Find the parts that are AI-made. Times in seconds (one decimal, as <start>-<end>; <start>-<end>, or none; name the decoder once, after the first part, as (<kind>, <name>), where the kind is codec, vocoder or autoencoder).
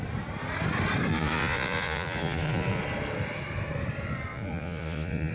1.1-2.8 (vocoder, Vocos); 4.3-5.3